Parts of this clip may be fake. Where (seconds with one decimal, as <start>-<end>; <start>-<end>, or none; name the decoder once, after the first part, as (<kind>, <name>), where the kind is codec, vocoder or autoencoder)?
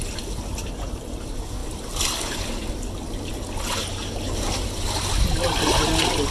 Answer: none